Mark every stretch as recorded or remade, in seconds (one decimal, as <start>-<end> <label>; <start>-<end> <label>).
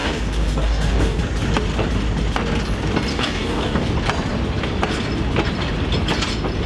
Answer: 0.0-1.2 remade; 1.2-3.1 recorded; 3.1-3.9 remade; 3.9-6.7 recorded